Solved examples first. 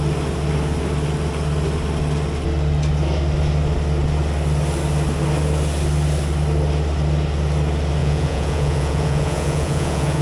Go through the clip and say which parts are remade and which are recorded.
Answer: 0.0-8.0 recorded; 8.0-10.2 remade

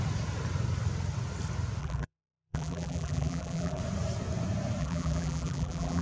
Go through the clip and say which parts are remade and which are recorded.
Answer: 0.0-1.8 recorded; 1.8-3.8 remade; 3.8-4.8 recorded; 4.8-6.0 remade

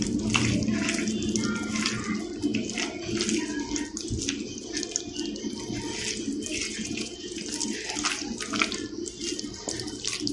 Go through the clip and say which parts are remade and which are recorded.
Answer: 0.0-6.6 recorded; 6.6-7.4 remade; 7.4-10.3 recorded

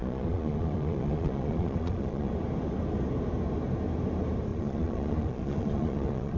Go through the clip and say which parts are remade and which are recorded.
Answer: 0.0-2.3 remade; 2.3-4.5 recorded; 4.5-6.4 remade